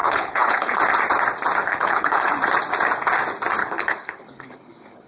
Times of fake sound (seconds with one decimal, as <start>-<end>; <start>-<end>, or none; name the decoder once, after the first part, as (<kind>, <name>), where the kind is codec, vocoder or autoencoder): 0.0-0.8 (codec, HILCodec); 1.6-2.3; 3.6-5.1

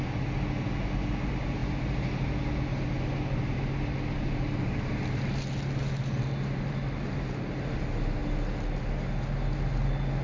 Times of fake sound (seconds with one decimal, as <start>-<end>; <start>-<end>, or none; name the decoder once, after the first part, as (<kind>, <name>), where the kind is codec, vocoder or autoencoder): none

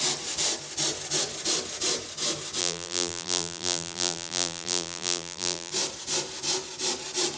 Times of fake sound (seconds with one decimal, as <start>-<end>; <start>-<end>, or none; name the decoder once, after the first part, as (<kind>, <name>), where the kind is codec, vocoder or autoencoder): 2.6-5.7 (vocoder, BigVGAN v2)

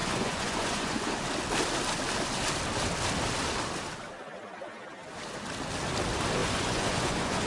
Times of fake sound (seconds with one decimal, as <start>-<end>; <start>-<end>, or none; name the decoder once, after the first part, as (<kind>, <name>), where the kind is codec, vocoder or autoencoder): 0.0-1.1 (vocoder, Vocos); 6.4-7.5

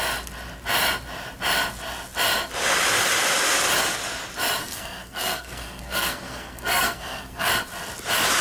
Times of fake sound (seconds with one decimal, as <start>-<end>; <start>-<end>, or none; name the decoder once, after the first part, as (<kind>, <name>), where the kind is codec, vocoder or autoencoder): 4.6-7.5 (codec, SNAC)